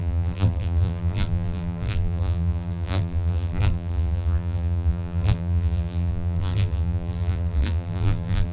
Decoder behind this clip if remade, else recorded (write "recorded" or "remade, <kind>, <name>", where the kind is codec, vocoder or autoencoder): remade, vocoder, BigVGAN v2